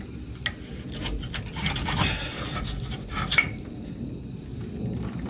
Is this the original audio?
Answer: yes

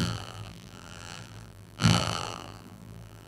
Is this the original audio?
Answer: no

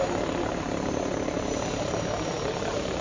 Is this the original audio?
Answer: no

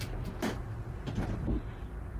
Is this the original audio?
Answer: yes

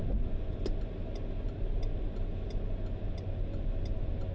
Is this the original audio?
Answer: yes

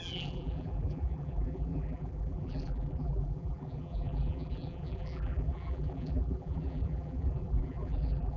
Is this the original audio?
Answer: no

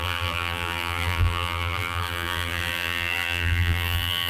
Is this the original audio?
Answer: no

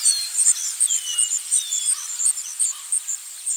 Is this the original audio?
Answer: no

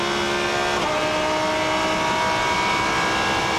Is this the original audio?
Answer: yes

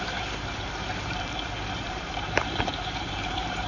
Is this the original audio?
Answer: no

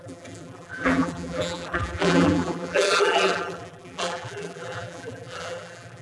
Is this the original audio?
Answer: no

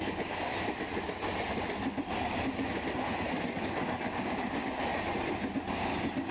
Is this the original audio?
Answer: yes